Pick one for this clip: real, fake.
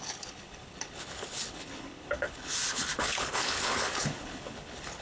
fake